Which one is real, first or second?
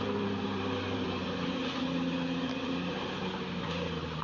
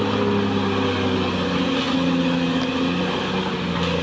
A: second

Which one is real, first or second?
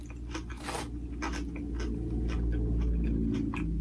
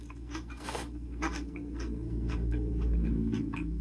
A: first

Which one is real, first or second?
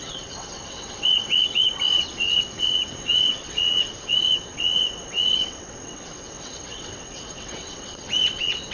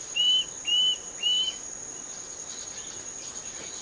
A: second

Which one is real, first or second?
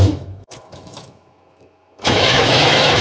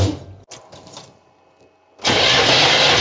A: second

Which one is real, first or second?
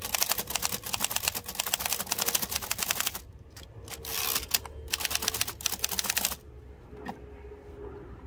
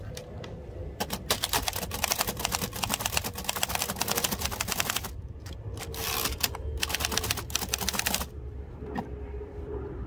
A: first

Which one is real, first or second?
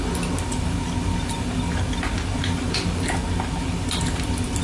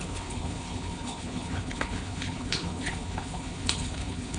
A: first